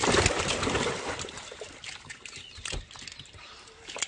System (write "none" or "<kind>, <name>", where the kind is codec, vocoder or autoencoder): none